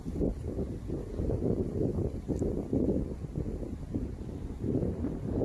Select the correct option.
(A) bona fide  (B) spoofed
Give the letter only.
A